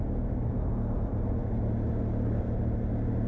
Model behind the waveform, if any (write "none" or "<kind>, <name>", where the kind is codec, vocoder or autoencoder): none